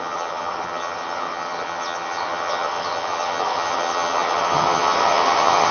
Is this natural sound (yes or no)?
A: no